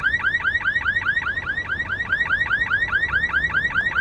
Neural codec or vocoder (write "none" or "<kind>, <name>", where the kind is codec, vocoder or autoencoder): none